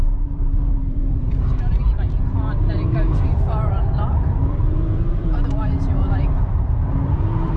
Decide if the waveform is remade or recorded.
remade